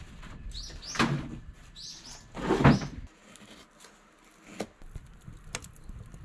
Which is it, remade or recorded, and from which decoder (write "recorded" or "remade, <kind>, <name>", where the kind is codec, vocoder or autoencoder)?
recorded